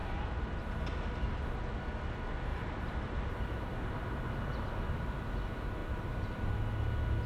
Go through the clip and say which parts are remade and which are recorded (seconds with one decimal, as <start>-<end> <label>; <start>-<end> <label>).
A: 0.0-0.6 remade; 0.6-2.5 recorded; 2.5-3.8 remade; 3.8-5.8 recorded; 5.8-6.5 remade; 6.5-7.3 recorded